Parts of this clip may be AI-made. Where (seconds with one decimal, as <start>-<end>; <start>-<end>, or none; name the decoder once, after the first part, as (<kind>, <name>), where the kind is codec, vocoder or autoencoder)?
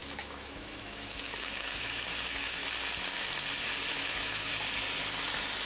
0.0-2.6 (autoencoder, DAC-VAE); 3.9-4.5